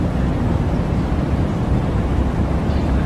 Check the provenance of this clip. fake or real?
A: fake